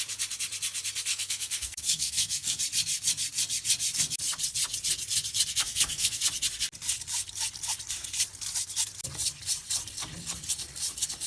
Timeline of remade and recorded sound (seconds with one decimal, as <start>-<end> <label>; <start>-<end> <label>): 0.0-1.1 recorded; 1.1-2.6 remade; 2.6-5.6 recorded; 5.6-6.2 remade; 6.2-11.3 recorded